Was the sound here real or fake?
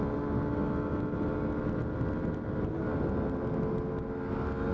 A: real